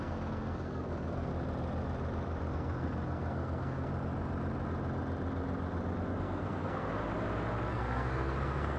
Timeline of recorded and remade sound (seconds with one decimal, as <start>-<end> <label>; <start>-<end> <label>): 0.0-1.3 remade; 1.3-2.5 recorded; 2.5-3.9 remade; 3.9-6.2 recorded; 6.2-7.0 remade; 7.0-7.7 recorded; 7.7-8.8 remade